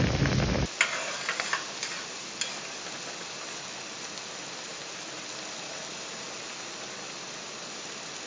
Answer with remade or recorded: recorded